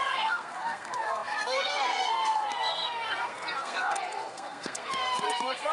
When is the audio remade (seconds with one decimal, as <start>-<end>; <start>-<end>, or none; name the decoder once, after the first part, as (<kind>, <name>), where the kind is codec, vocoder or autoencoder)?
0.0-5.7 (codec, SNAC)